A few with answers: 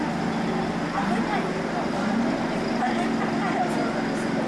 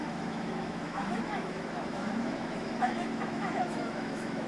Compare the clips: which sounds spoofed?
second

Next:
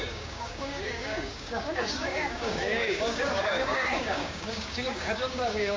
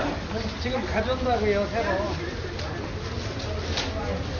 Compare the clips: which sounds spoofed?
first